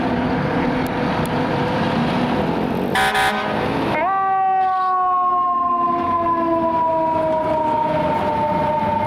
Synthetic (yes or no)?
no